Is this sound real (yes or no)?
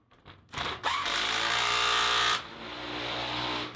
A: yes